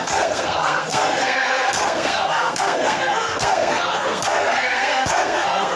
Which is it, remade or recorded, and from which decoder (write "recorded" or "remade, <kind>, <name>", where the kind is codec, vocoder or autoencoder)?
remade, codec, SNAC